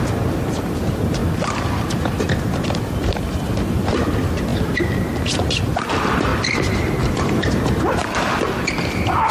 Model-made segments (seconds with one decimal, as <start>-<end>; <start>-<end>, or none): 0.0-1.2; 2.0-4.5; 5.3-6.3; 7.3-8.0; 8.7-9.3

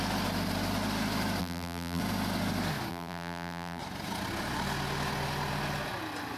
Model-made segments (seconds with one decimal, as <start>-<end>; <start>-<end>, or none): 1.4-2.0; 2.9-3.8